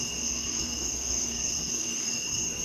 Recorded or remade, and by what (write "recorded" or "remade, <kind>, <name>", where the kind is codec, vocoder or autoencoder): remade, codec, SNAC